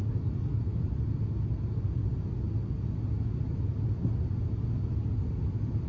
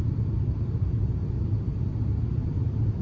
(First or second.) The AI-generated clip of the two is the second